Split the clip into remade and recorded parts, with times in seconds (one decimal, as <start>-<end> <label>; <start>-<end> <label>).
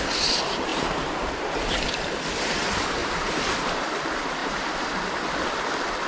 0.0-0.7 recorded; 0.7-1.3 remade; 1.3-3.0 recorded; 3.0-3.9 remade; 3.9-4.4 recorded; 4.4-5.0 remade; 5.0-6.1 recorded